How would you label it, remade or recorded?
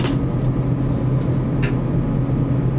recorded